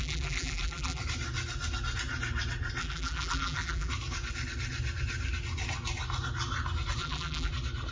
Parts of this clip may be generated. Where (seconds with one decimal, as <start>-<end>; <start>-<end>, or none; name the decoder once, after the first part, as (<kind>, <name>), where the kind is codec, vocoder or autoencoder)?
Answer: 0.0-1.0 (vocoder, BigVGAN v2); 2.8-3.9; 7.0-7.5